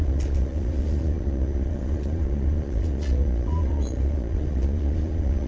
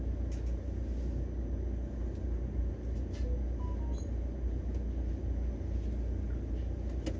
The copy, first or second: first